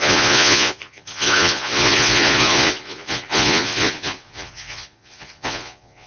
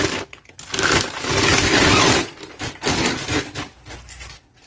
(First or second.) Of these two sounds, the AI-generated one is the first